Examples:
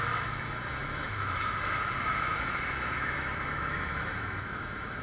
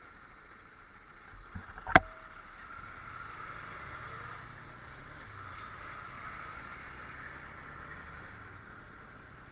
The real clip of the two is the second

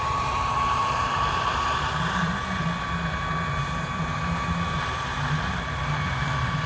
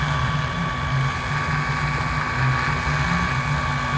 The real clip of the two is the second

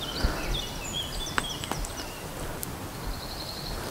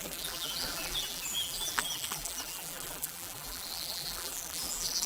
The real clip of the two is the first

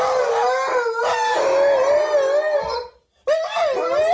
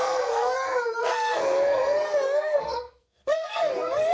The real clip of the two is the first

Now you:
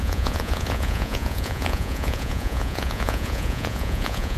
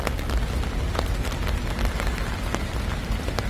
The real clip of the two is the second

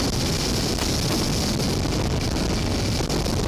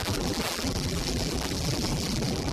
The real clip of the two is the first